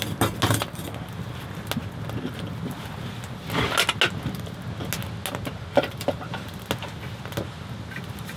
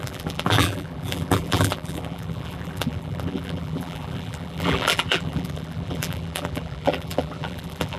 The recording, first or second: first